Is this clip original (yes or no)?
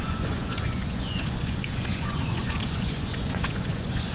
no